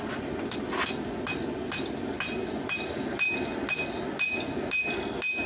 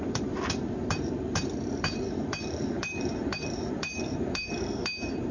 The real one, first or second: first